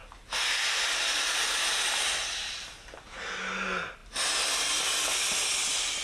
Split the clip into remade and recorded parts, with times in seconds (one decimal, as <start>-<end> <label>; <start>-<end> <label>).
0.0-6.0 recorded